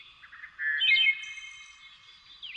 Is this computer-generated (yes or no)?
no